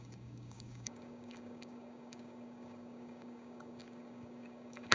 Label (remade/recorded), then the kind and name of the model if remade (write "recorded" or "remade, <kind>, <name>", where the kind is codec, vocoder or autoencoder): remade, codec, DAC